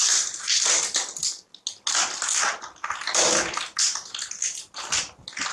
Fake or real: real